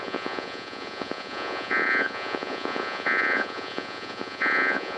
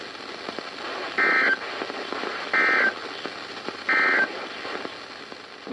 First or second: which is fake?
first